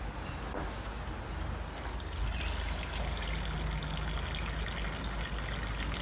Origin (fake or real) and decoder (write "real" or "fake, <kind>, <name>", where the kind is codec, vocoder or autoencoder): real